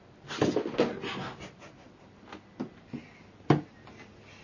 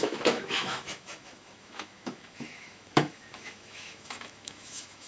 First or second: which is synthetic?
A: second